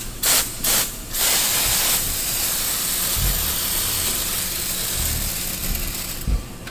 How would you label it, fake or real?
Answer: real